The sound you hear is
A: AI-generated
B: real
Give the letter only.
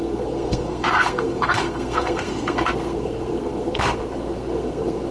A